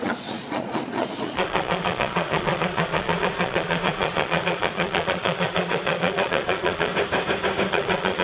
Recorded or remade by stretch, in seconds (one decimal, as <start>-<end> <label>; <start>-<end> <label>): 0.0-6.9 remade; 6.9-7.7 recorded; 7.7-8.2 remade